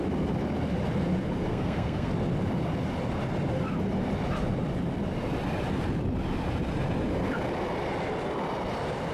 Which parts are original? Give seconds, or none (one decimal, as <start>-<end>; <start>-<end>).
0.0-1.5; 2.1-9.1